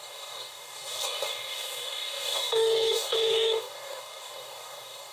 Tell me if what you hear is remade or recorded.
remade